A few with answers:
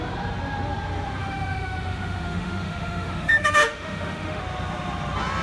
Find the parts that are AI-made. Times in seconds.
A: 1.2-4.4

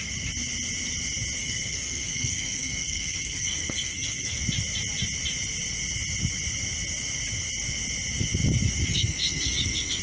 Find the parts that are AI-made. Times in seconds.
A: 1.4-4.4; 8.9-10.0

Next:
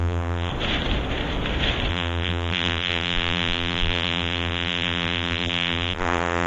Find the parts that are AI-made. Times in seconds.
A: 0.0-0.5; 1.9-6.5

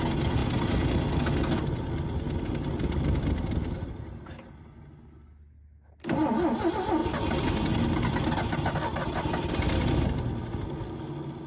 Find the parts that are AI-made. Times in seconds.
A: none

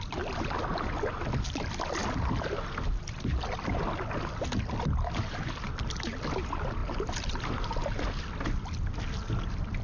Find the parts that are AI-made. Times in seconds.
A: none